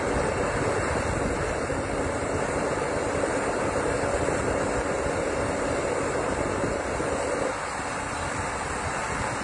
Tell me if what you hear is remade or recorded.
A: recorded